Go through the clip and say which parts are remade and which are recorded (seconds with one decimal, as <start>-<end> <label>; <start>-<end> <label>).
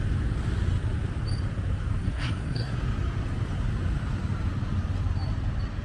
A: 0.0-2.0 recorded; 2.0-2.8 remade; 2.8-5.8 recorded